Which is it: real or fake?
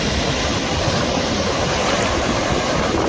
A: real